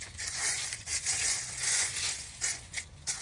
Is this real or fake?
fake